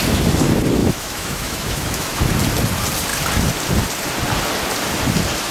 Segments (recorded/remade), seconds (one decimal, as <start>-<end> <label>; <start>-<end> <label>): 0.0-0.8 recorded; 0.8-2.2 remade; 2.2-5.5 recorded